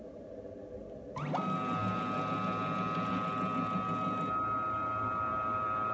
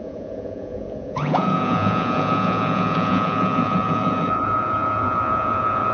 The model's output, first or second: second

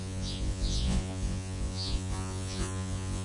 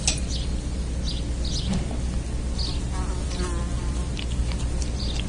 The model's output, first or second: first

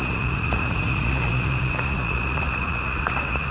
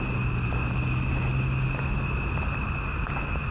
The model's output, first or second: first